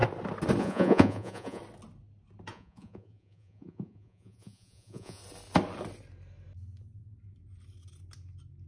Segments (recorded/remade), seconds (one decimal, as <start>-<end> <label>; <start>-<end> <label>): 0.0-0.6 recorded; 0.6-1.6 remade; 1.6-2.5 recorded; 2.5-5.2 remade; 5.2-8.7 recorded